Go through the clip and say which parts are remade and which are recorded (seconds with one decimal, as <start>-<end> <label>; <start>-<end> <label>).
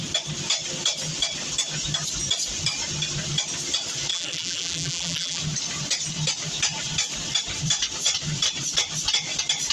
0.0-4.1 recorded; 4.1-5.4 remade; 5.4-9.7 recorded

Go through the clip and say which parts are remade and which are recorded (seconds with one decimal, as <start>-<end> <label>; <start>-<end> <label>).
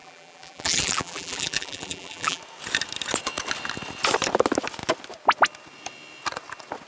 0.0-2.4 remade; 2.4-6.9 recorded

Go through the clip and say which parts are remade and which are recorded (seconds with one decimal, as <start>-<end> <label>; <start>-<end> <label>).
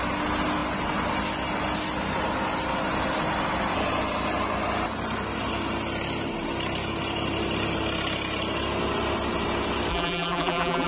0.0-9.9 recorded; 9.9-10.9 remade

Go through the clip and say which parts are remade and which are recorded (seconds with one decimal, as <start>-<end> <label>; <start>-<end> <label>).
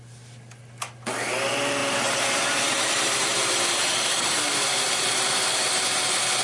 0.0-1.8 recorded; 1.8-5.4 remade; 5.4-6.4 recorded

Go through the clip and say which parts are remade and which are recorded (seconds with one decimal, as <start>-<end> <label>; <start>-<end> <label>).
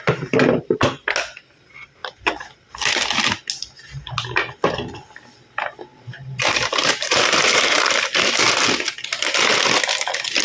0.0-2.0 recorded; 2.0-2.5 remade; 2.5-5.9 recorded; 5.9-7.9 remade; 7.9-10.4 recorded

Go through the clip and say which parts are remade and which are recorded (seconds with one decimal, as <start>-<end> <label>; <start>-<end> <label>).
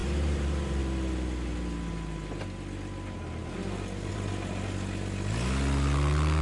0.0-0.8 remade; 0.8-6.4 recorded